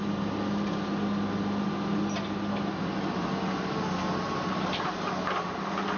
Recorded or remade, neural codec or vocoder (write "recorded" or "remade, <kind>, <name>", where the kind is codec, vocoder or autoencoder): recorded